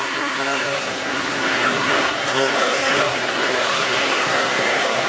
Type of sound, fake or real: fake